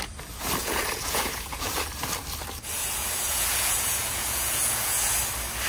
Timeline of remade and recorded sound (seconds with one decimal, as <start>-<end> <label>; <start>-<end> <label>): 0.0-0.6 recorded; 0.6-1.7 remade; 1.7-2.8 recorded; 2.8-5.2 remade; 5.2-5.7 recorded

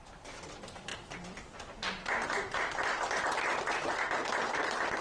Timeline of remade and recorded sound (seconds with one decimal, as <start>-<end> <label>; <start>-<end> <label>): 0.0-5.0 recorded